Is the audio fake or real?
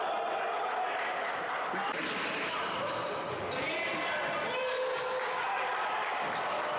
real